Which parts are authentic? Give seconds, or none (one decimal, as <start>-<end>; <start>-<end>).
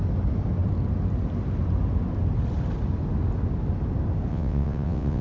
0.0-4.3